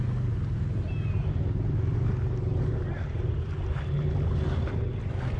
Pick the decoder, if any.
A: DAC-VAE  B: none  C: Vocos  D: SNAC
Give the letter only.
B